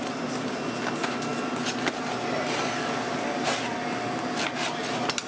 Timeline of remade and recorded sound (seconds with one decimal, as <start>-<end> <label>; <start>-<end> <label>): 0.0-5.3 recorded